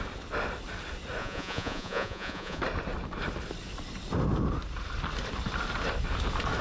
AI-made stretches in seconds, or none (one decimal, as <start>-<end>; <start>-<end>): 1.2-2.6

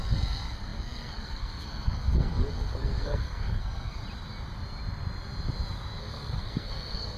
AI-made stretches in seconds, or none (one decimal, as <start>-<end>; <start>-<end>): 0.0-4.0; 6.0-7.2

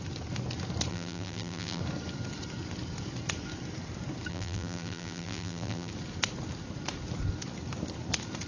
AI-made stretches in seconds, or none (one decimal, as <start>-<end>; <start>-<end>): 0.9-1.8; 4.3-5.9

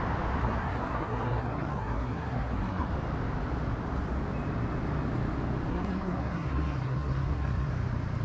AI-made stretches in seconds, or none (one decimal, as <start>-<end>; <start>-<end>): 0.4-2.9; 5.7-7.7

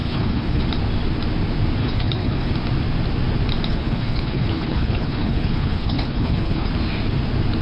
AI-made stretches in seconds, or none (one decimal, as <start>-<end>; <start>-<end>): 0.0-0.6; 1.8-2.5; 3.7-6.7

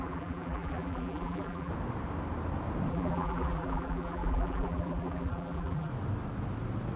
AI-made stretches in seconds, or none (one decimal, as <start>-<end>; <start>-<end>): 0.0-1.7; 2.9-5.9